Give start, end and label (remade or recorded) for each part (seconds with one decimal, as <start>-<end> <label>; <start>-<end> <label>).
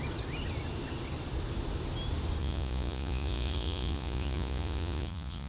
0.0-2.4 recorded; 2.4-5.5 remade